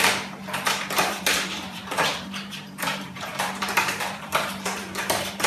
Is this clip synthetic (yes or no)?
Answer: yes